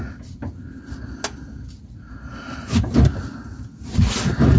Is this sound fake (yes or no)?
no